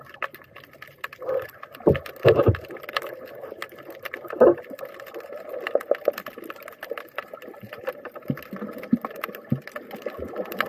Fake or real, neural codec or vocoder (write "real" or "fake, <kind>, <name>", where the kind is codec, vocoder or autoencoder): real